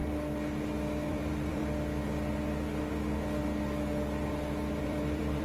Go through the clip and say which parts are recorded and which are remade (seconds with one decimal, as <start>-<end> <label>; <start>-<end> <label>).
0.0-1.1 recorded; 1.1-1.6 remade; 1.6-4.8 recorded; 4.8-5.4 remade